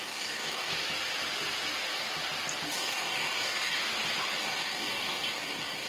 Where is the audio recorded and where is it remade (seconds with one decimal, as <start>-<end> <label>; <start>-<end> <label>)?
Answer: 0.0-0.7 remade; 0.7-2.7 recorded; 2.7-3.8 remade; 3.8-4.4 recorded; 4.4-5.9 remade